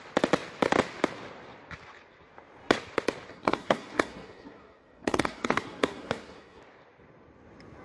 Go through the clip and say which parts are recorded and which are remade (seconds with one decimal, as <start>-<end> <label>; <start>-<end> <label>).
0.0-3.3 recorded; 3.3-6.6 remade; 6.6-7.8 recorded